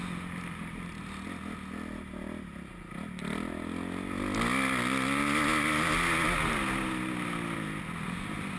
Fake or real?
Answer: real